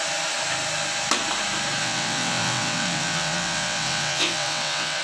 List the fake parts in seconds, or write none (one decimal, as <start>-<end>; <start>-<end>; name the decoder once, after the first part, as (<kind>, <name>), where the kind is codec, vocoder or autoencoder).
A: 1.8-5.0 (vocoder, WaveNeXt)